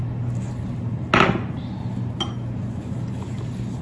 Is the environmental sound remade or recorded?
recorded